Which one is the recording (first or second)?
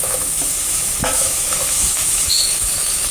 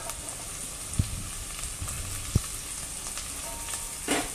second